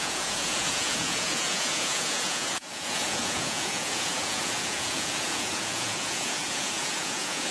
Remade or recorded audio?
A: remade